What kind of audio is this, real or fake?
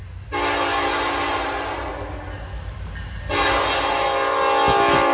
real